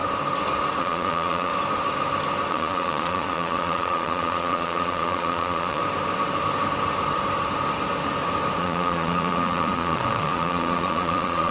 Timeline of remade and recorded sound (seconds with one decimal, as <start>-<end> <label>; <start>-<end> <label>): 0.0-0.8 recorded; 0.8-1.5 remade; 1.5-2.5 recorded; 2.5-5.8 remade; 5.8-8.6 recorded; 8.6-11.5 remade